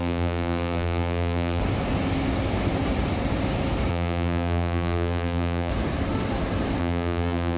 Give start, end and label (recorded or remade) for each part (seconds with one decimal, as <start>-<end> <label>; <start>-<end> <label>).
0.0-1.6 remade; 1.6-3.9 recorded; 3.9-5.7 remade; 5.7-6.8 recorded; 6.8-7.6 remade